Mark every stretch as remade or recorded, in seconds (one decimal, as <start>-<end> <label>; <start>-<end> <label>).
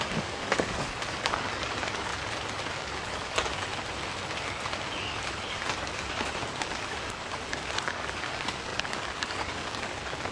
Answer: 0.0-2.1 remade; 2.1-2.7 recorded; 2.7-3.7 remade; 3.7-5.0 recorded; 5.0-10.3 remade